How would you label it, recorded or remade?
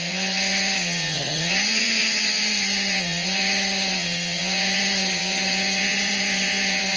remade